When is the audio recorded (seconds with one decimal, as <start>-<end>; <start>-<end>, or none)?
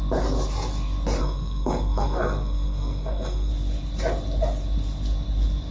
0.0-1.2; 3.5-5.7